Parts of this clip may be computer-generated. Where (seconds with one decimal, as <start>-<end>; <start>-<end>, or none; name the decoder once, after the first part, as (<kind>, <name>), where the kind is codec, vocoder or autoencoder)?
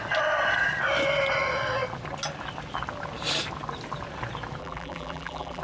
4.6-5.6 (vocoder, BigVGAN v2)